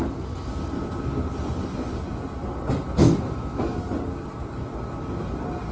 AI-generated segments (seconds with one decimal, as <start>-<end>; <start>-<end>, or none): 3.0-3.8